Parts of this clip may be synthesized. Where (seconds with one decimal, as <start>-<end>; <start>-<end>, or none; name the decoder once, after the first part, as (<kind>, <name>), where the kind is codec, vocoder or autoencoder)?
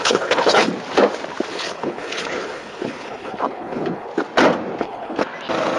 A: 0.0-0.7 (codec, HILCodec); 1.5-4.1; 4.8-5.2